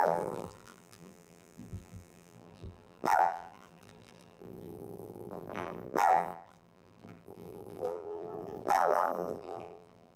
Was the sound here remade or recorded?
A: remade